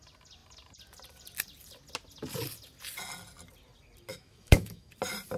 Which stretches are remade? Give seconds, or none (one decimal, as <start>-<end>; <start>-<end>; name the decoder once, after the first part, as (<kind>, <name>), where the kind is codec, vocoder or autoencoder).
4.1-4.9 (autoencoder, DAC-VAE)